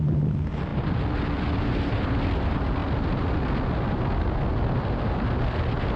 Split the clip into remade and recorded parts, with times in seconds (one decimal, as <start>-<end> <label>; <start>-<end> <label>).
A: 0.0-6.0 recorded

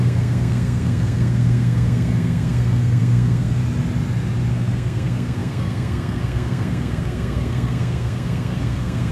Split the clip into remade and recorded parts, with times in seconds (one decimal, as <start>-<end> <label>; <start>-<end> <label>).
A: 0.0-3.6 remade; 3.6-4.5 recorded; 4.5-9.1 remade

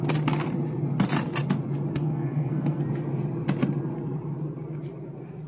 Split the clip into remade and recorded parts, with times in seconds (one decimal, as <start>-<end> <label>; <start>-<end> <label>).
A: 0.0-1.9 recorded; 1.9-2.8 remade; 2.8-5.5 recorded